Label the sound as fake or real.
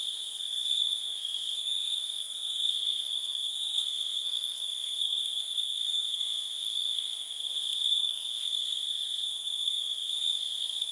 fake